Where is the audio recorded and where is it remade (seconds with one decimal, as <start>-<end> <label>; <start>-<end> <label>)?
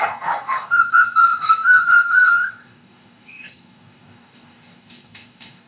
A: 0.0-5.7 remade